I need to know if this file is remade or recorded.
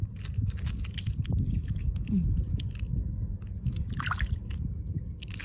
recorded